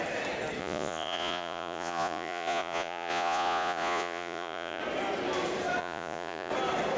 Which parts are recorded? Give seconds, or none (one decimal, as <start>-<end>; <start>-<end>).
0.0-0.6; 4.8-5.8; 6.5-7.0